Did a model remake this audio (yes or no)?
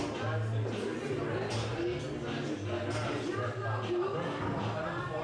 no